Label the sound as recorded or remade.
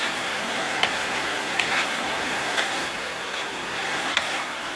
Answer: remade